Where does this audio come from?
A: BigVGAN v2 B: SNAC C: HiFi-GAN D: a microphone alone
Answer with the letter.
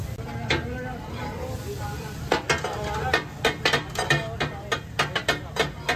D